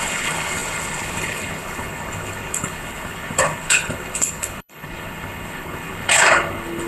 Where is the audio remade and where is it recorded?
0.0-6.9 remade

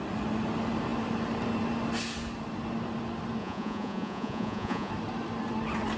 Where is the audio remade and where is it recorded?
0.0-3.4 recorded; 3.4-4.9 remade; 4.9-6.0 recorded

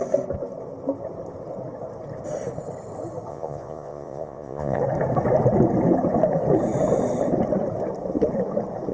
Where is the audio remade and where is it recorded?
0.0-3.3 recorded; 3.3-4.8 remade; 4.8-8.9 recorded

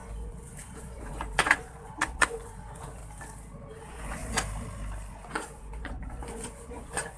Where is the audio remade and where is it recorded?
0.0-3.0 remade; 3.0-3.7 recorded; 3.7-4.2 remade; 4.2-5.1 recorded; 5.1-7.2 remade